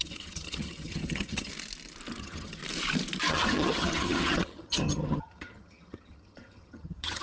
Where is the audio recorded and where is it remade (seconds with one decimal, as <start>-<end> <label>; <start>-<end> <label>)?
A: 0.0-1.5 remade; 1.5-2.2 recorded; 2.2-2.6 remade; 2.6-3.3 recorded; 3.3-7.2 remade